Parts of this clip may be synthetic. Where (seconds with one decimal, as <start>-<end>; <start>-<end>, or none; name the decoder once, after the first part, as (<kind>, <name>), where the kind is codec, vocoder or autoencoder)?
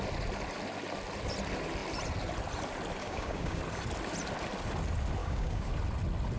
3.0-3.6 (codec, DAC); 5.2-5.7